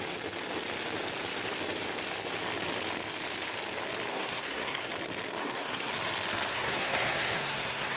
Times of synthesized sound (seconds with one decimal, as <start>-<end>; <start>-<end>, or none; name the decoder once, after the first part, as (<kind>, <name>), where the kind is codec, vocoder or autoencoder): 4.1-4.9 (codec, SNAC); 5.4-5.9; 6.5-8.0